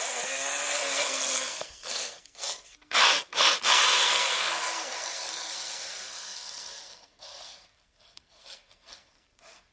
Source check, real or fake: fake